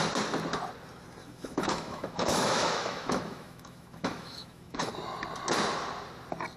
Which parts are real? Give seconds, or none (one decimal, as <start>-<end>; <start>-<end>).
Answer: 0.0-1.2; 4.9-6.6